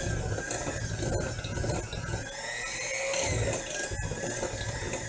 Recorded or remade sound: recorded